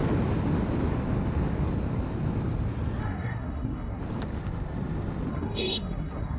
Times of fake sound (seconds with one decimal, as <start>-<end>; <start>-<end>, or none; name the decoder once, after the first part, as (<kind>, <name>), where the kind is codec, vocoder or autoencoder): 3.0-4.0 (codec, SNAC); 5.3-6.4